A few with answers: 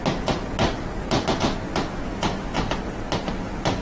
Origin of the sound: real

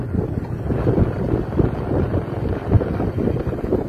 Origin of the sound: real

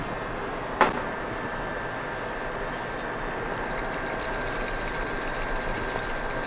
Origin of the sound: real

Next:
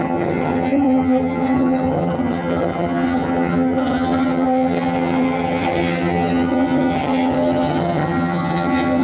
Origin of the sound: fake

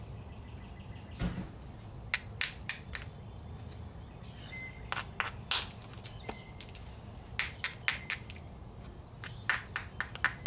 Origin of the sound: real